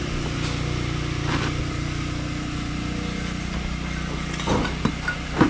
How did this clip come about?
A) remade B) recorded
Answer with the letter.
B